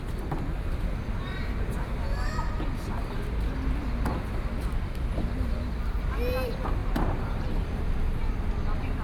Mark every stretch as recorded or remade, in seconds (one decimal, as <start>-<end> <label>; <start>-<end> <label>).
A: 0.0-6.8 recorded; 6.8-8.5 remade; 8.5-9.0 recorded